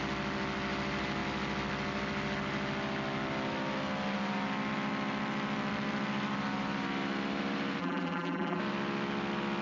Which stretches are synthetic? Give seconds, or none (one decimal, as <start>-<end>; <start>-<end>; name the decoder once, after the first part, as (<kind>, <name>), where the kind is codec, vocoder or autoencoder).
7.8-8.6 (vocoder, BigVGAN v2)